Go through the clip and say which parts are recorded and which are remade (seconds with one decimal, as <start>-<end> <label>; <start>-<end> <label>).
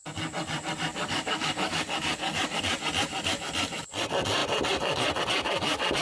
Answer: 0.0-0.9 recorded; 0.9-2.6 remade; 2.6-6.0 recorded